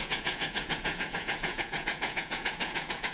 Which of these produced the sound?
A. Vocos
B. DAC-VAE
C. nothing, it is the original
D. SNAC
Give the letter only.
A